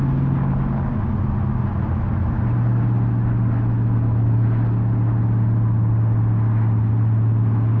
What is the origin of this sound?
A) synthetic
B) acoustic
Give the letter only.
B